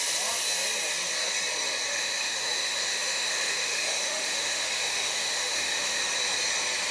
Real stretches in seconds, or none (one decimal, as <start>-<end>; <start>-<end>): 0.0-1.9; 6.0-6.9